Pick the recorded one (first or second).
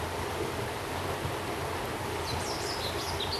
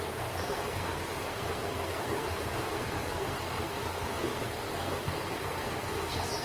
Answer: first